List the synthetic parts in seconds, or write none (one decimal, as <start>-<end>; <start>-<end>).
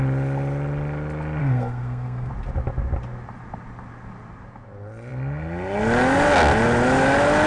1.4-2.3